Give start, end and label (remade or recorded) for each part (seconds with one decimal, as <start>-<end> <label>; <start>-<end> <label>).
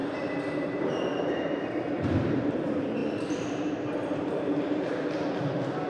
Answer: 0.0-2.5 remade; 2.5-3.0 recorded; 3.0-5.2 remade; 5.2-5.9 recorded